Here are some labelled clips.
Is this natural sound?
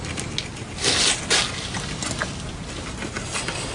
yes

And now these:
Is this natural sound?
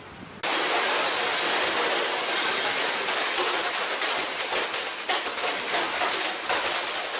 yes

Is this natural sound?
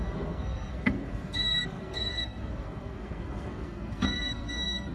no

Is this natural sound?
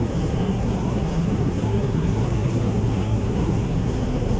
no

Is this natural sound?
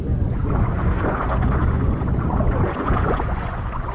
no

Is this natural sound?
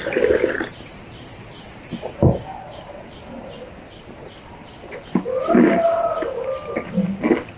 yes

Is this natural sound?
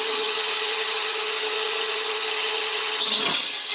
no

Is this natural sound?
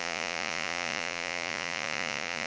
no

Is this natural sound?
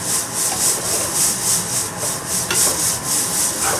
yes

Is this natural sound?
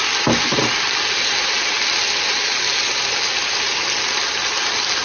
yes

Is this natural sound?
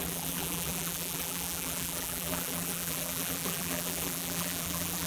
no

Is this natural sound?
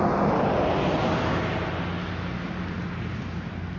yes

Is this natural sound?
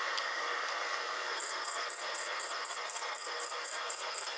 no